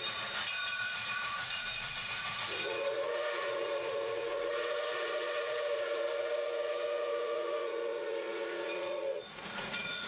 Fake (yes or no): yes